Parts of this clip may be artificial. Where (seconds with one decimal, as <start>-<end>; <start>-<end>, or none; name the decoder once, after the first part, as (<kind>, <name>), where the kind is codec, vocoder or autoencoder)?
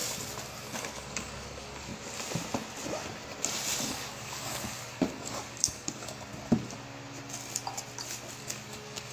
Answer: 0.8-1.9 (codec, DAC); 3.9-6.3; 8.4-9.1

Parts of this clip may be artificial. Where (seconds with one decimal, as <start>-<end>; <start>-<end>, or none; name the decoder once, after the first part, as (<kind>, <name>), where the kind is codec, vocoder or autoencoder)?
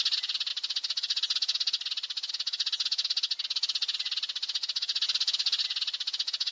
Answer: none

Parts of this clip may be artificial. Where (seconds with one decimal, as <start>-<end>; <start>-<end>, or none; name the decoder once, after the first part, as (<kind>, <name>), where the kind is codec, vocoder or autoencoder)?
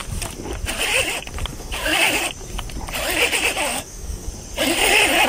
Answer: 1.5-2.2 (codec, DAC); 3.7-4.3